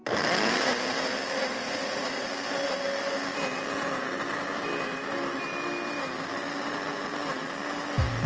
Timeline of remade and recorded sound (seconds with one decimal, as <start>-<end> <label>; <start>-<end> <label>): 0.0-1.6 recorded; 1.6-2.3 remade; 2.3-8.3 recorded

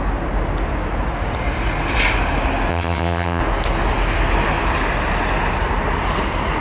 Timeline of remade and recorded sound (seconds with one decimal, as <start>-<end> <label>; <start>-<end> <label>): 0.0-2.7 recorded; 2.7-3.4 remade; 3.4-6.6 recorded

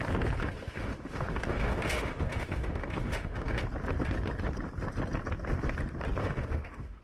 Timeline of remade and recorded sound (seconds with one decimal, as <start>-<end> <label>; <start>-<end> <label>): 0.0-0.4 recorded; 0.4-3.6 remade; 3.6-6.2 recorded; 6.2-7.0 remade

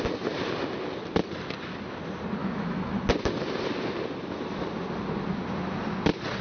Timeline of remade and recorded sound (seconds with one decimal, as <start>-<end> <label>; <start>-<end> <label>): 0.0-2.4 recorded; 2.4-3.0 remade; 3.0-6.4 recorded

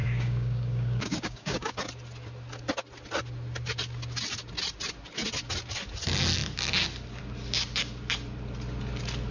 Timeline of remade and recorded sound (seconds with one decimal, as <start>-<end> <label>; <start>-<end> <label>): 0.0-1.7 remade; 1.7-9.3 recorded

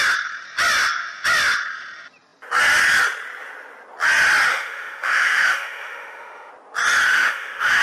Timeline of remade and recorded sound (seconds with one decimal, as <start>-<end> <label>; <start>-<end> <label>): 0.0-4.5 recorded; 4.5-6.5 remade; 6.5-7.1 recorded; 7.1-7.8 remade